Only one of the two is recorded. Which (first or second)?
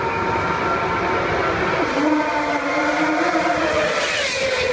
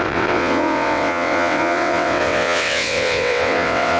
first